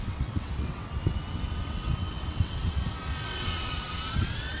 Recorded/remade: remade